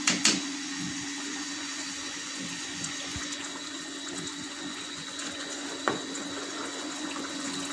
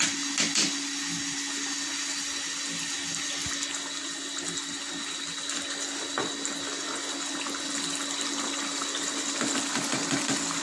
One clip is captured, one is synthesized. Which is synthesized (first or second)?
first